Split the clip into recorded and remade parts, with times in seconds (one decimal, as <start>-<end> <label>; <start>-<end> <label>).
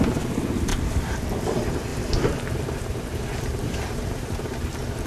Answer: 0.0-1.9 recorded; 1.9-4.5 remade; 4.5-5.1 recorded